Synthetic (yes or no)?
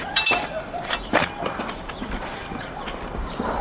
yes